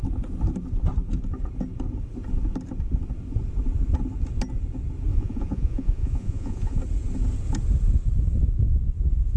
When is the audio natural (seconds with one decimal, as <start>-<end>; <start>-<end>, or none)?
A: 0.0-5.1; 6.8-9.4